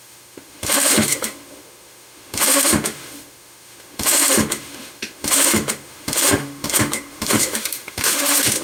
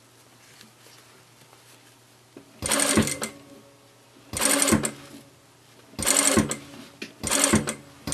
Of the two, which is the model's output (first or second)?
first